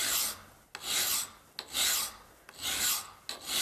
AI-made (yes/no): no